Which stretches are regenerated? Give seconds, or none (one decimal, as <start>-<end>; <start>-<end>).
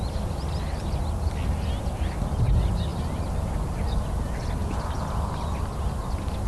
none